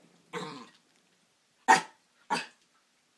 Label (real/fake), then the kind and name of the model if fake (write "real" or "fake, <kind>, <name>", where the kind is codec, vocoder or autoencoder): real